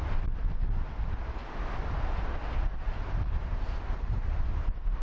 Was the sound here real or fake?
real